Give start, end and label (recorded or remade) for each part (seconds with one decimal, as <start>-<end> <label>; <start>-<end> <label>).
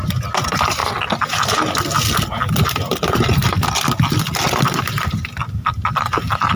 0.0-6.6 recorded